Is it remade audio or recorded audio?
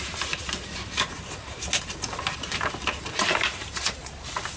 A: recorded